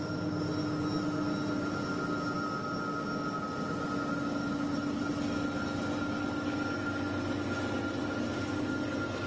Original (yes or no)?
yes